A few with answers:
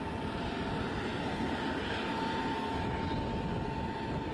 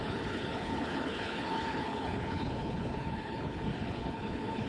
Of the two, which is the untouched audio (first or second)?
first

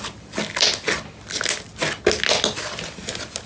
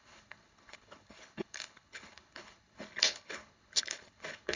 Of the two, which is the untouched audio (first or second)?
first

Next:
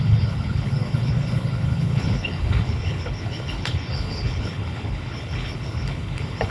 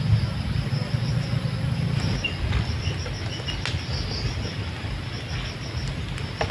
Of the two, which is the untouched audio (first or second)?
second